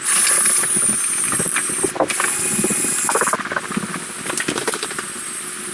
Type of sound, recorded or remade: recorded